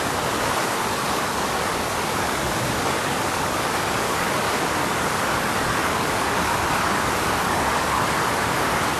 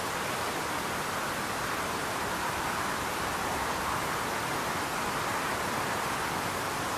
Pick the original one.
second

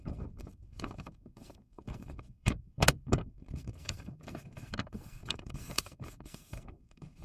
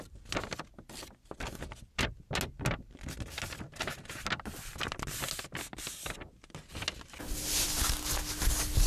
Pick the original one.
second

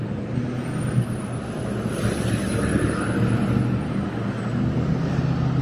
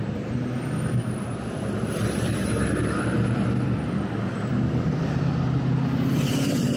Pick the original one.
first